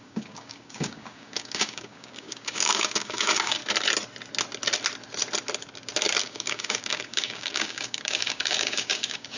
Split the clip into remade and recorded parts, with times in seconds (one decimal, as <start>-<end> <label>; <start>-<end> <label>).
0.0-3.6 remade; 3.6-6.2 recorded; 6.2-9.4 remade